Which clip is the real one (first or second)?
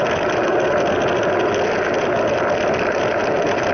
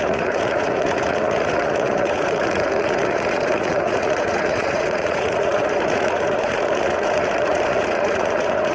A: first